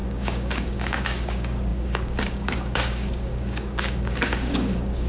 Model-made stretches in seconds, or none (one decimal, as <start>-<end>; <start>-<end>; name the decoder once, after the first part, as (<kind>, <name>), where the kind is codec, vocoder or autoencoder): 0.0-5.1 (codec, DAC)